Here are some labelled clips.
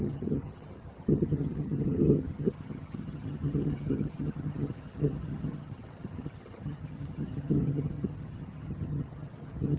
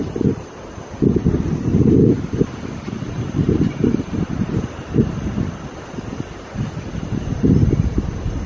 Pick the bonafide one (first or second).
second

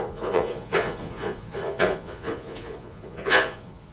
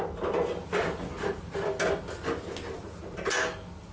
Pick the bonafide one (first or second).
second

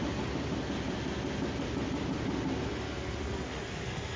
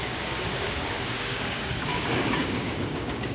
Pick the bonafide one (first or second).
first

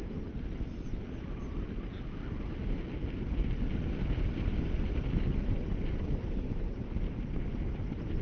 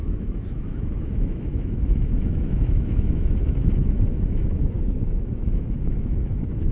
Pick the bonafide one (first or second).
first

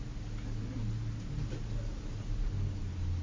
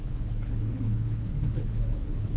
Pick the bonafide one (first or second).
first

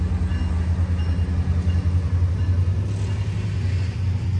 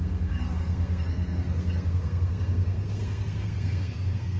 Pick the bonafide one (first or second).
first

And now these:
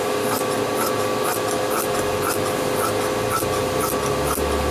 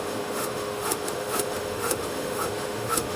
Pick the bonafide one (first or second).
first